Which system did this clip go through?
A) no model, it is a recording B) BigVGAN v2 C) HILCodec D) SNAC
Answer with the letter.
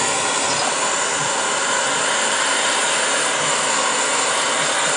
A